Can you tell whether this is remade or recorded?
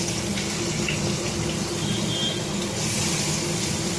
recorded